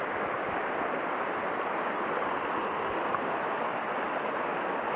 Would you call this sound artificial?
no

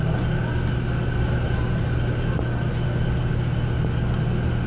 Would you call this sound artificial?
no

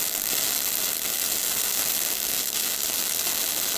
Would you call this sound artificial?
no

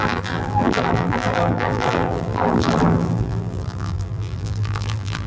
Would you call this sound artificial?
yes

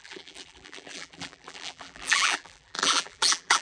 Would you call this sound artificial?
yes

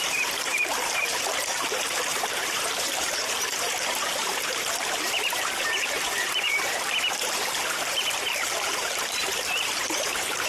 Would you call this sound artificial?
yes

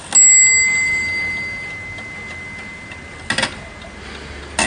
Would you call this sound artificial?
no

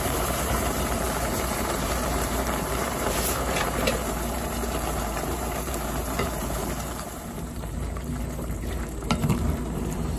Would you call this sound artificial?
yes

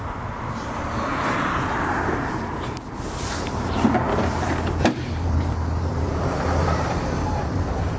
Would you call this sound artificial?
yes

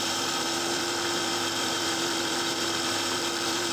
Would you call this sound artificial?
yes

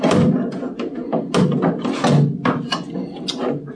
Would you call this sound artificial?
no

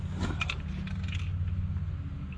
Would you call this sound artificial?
no